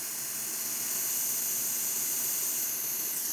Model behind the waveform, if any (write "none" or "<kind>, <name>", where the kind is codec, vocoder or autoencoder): none